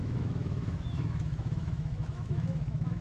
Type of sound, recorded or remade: remade